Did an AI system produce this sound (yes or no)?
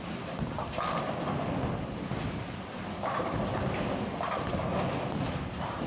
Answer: no